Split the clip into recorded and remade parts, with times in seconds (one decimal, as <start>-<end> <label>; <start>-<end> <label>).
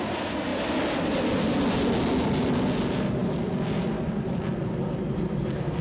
0.0-5.8 recorded